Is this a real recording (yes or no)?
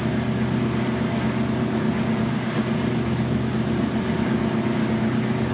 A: yes